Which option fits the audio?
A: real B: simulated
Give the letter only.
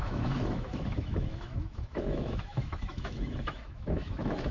B